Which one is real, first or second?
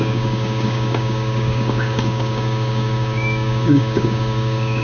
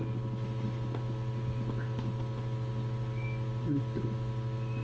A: second